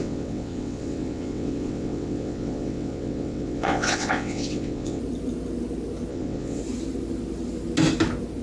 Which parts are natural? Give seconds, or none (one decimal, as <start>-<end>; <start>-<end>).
5.0-6.1; 6.6-8.4